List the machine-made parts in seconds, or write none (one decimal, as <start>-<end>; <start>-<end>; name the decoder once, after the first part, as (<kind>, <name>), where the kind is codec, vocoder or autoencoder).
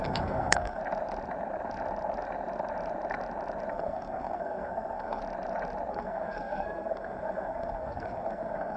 0.0-0.8 (codec, SNAC); 3.7-5.2; 5.9-8.8